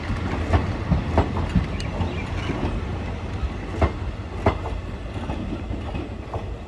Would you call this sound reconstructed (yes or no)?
no